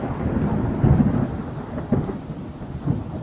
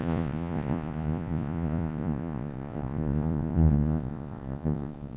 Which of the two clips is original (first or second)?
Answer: first